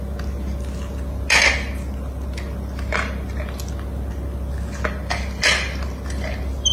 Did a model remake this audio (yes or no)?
no